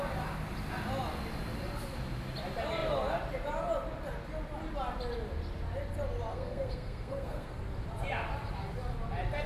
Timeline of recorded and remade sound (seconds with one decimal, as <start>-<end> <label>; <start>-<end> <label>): 0.0-6.3 recorded; 6.3-7.6 remade; 7.6-9.5 recorded